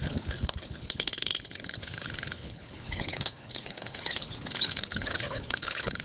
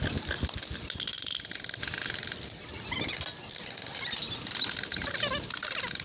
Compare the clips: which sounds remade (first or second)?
first